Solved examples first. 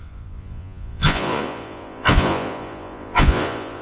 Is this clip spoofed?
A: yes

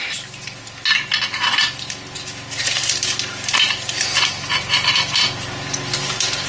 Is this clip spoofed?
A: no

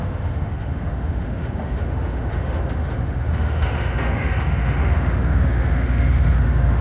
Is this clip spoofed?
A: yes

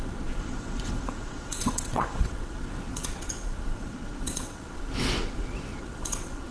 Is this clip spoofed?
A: yes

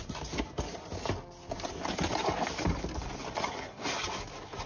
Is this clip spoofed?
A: no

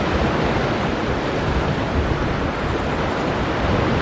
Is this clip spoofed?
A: no